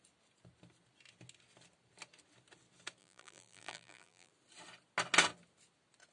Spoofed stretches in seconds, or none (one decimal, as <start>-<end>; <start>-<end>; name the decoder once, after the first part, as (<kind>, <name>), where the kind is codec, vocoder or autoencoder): 3.0-4.3 (vocoder, BigVGAN v2)